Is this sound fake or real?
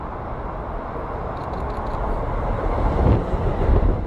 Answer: real